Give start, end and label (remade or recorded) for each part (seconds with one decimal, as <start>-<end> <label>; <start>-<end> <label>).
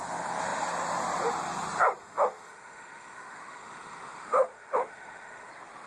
0.0-2.0 recorded; 2.0-5.5 remade; 5.5-5.9 recorded